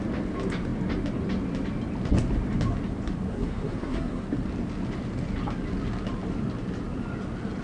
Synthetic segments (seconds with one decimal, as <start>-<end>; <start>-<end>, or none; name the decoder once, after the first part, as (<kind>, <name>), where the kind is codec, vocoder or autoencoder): 3.3-4.2 (codec, SNAC)